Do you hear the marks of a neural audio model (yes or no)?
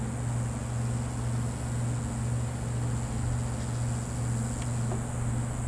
no